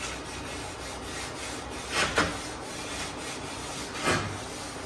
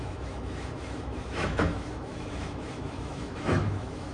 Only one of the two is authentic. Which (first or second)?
first